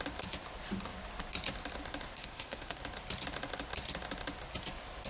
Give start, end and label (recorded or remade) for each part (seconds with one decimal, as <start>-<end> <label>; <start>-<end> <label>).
0.0-2.2 recorded; 2.2-2.8 remade; 2.8-5.1 recorded

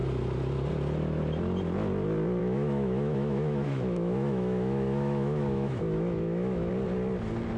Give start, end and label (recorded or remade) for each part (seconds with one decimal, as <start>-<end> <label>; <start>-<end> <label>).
0.0-2.4 recorded; 2.4-6.7 remade; 6.7-7.6 recorded

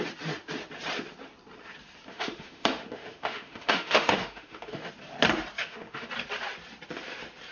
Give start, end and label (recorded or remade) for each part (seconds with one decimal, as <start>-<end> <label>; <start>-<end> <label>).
0.0-2.1 recorded; 2.1-4.9 remade; 4.9-5.6 recorded; 5.6-6.1 remade; 6.1-7.5 recorded

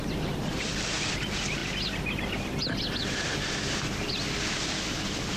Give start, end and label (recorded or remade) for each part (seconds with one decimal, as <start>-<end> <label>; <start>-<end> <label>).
0.0-5.4 recorded

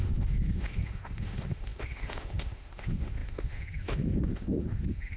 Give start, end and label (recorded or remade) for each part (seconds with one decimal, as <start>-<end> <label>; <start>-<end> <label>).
0.0-5.2 remade

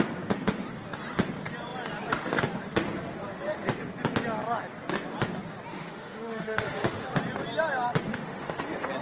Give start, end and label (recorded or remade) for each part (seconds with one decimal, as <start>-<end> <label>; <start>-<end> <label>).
0.0-5.7 recorded; 5.7-7.2 remade; 7.2-8.1 recorded; 8.1-8.6 remade; 8.6-9.0 recorded

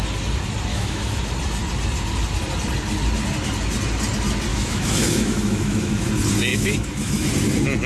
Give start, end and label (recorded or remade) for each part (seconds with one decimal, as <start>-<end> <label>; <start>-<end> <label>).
0.0-0.7 recorded; 0.7-1.2 remade; 1.2-4.5 recorded; 4.5-6.1 remade; 6.1-6.5 recorded; 6.5-7.3 remade; 7.3-7.9 recorded